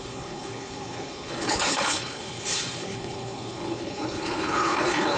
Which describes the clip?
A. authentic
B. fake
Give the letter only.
B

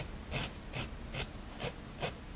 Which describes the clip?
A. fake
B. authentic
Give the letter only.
B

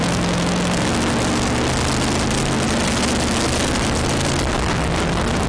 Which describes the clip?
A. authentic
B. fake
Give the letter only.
A